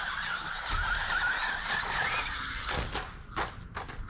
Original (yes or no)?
yes